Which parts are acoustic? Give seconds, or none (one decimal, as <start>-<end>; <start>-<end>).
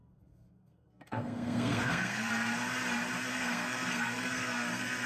2.3-3.3